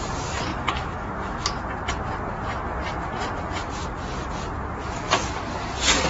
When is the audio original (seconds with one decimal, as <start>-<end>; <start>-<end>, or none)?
0.0-0.5; 1.5-6.1